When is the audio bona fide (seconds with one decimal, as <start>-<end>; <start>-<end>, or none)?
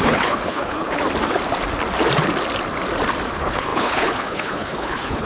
1.0-3.3